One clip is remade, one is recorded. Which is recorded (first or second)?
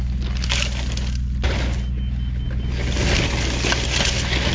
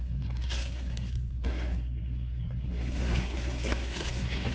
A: first